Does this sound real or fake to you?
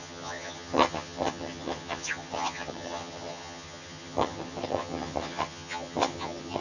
fake